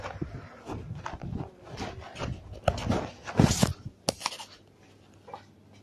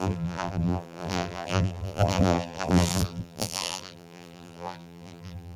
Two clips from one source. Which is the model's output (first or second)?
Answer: second